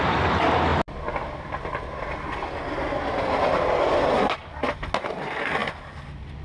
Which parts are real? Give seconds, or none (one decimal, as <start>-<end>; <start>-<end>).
0.0-6.4